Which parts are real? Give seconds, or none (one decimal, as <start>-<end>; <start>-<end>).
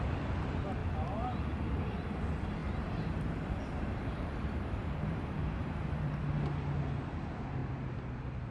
0.0-0.8; 1.9-2.6; 6.2-7.6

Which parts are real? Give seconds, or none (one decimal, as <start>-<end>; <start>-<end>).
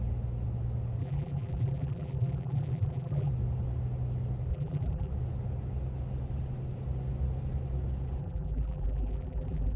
0.0-1.0; 3.3-4.5; 5.1-8.2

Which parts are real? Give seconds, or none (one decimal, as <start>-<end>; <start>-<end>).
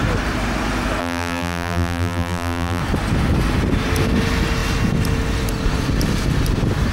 0.0-1.0; 2.8-6.9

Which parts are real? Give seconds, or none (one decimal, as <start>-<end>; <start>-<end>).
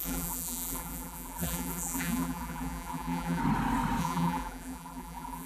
3.4-4.0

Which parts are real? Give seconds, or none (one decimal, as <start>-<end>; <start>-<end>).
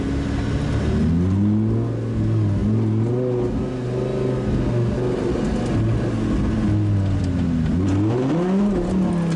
0.0-9.4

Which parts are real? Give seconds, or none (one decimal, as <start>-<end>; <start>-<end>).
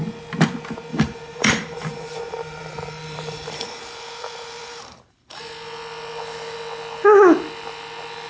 0.0-0.9; 5.4-8.3